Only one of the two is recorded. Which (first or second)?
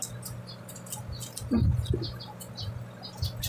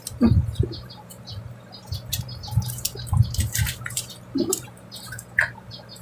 first